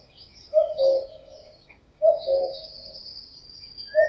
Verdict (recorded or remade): remade